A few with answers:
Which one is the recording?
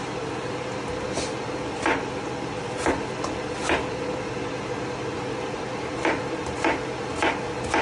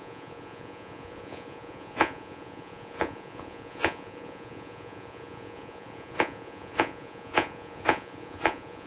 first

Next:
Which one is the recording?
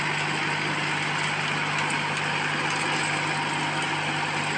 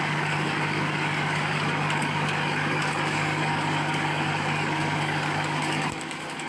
first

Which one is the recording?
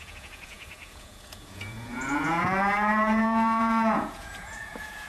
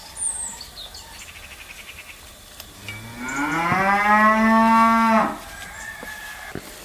second